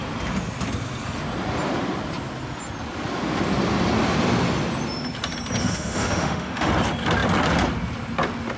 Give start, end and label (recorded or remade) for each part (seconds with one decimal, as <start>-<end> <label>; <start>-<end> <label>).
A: 0.0-5.6 recorded; 5.6-6.7 remade; 6.7-8.6 recorded